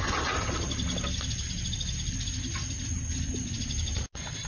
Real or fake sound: real